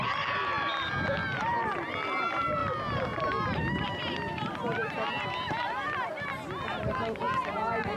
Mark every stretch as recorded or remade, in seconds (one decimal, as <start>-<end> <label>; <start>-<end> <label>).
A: 0.0-8.0 recorded